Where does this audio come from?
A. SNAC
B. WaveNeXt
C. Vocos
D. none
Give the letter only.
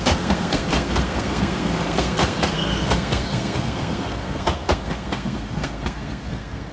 A